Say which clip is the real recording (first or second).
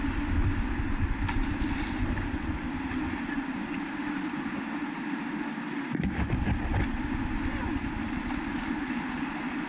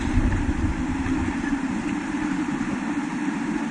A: first